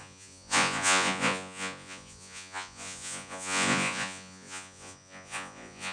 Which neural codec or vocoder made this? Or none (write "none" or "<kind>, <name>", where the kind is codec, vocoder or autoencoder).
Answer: vocoder, Vocos